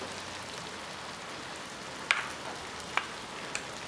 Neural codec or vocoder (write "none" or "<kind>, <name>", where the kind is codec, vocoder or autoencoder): none